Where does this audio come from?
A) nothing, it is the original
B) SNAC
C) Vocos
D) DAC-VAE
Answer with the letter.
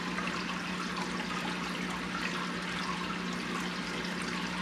A